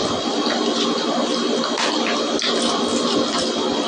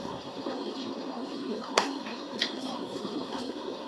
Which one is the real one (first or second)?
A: first